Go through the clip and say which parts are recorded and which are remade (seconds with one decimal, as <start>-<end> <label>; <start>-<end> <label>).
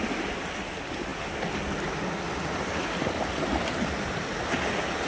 0.0-5.1 recorded